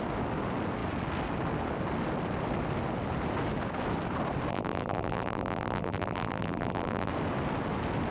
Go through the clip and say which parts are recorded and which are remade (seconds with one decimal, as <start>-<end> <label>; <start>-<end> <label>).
0.0-4.5 recorded; 4.5-7.1 remade; 7.1-8.1 recorded